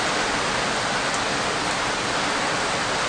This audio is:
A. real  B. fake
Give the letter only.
A